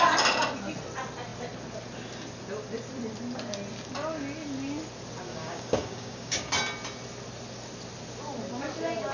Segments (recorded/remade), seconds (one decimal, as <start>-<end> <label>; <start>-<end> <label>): 0.0-5.3 recorded; 5.3-6.5 remade; 6.5-9.1 recorded